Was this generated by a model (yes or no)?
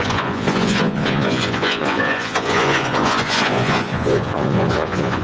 yes